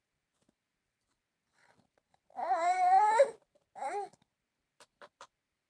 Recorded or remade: remade